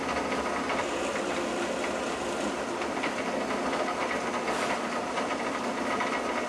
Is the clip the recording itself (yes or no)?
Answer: yes